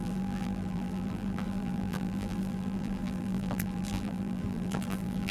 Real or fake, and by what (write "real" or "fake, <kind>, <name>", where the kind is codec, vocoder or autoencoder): fake, vocoder, BigVGAN v2